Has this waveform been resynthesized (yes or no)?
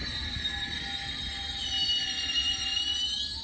no